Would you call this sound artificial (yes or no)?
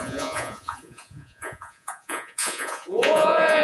yes